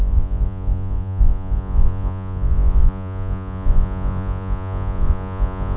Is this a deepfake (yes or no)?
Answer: yes